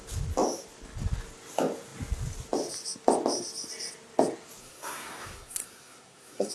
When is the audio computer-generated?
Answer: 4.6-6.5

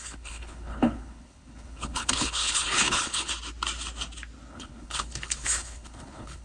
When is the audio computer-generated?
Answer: 0.0-3.3; 4.5-6.4

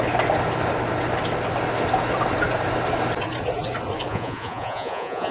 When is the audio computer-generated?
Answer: 4.1-5.3

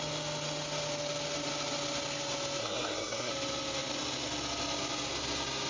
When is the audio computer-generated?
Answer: 2.6-3.3

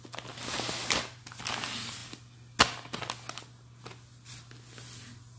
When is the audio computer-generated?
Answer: none